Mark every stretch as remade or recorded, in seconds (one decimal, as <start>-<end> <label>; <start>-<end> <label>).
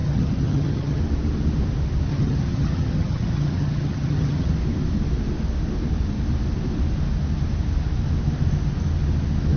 0.0-1.0 remade; 1.0-2.1 recorded; 2.1-4.5 remade; 4.5-9.6 recorded